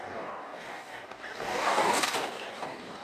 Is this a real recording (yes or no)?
no